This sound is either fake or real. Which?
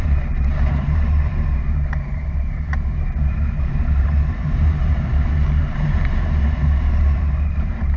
fake